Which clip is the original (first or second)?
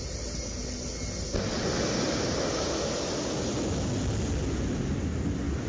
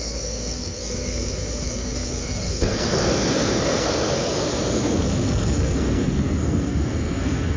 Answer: first